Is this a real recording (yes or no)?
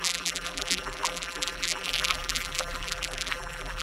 no